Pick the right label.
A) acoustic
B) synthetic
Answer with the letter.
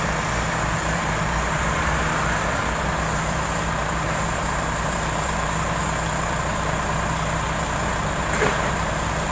B